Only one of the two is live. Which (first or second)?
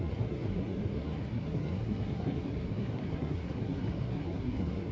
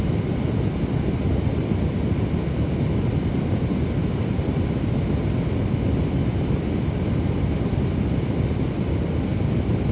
second